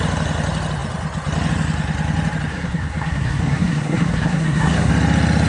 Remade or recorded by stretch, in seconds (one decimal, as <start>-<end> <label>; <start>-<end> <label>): 0.0-2.5 recorded; 2.5-4.9 remade; 4.9-5.5 recorded